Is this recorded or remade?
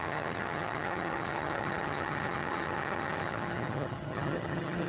remade